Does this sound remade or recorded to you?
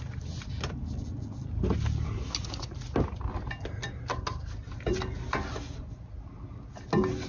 recorded